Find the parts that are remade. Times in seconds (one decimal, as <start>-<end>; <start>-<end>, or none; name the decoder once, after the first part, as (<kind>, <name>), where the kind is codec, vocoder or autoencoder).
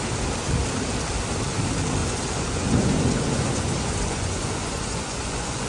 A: 2.0-5.7 (vocoder, Vocos)